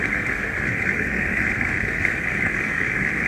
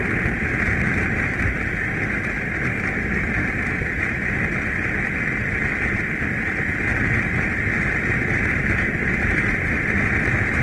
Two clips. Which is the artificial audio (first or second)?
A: first